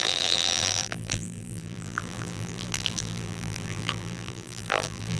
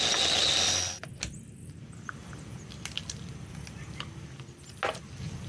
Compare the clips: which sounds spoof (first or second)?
first